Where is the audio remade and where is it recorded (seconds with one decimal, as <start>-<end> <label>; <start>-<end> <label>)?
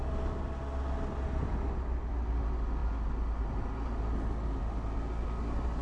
0.0-5.8 recorded